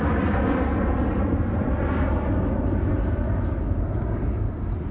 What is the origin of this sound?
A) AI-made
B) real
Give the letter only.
B